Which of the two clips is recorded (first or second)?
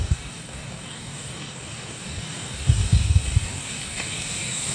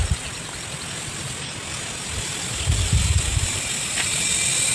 second